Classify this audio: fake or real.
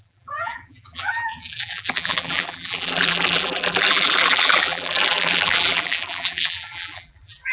fake